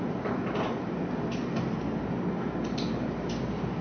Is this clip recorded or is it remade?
recorded